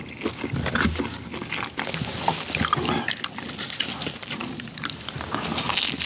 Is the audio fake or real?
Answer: real